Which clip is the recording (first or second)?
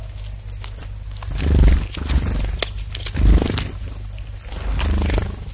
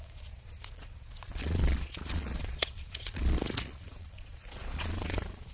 first